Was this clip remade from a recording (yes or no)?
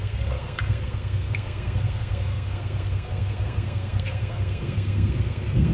yes